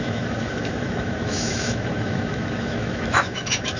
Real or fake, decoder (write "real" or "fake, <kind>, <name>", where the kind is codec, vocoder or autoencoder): fake, autoencoder, DAC-VAE